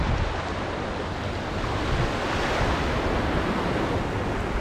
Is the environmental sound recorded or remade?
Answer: recorded